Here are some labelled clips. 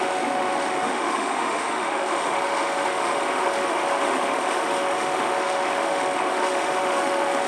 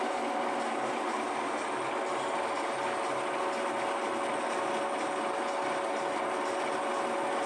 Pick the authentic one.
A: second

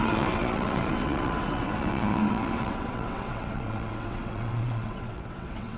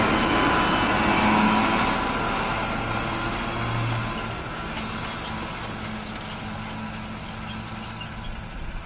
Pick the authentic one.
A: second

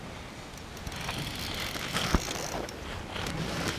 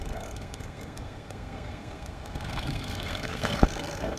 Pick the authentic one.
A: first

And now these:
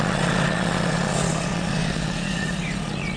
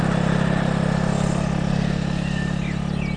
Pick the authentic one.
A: second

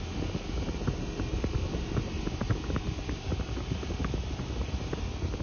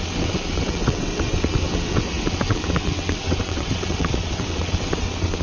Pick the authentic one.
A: first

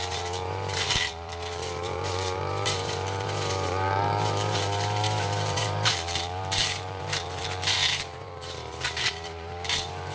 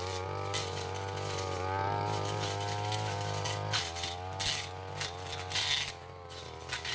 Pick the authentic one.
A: second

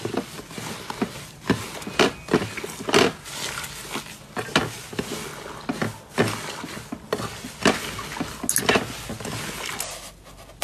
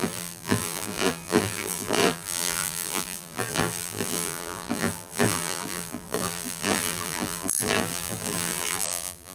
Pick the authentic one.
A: first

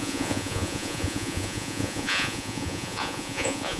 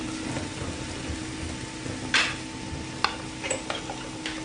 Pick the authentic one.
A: second